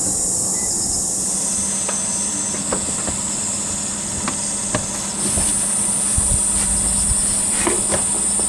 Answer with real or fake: real